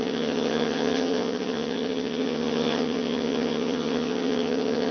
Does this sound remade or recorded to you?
remade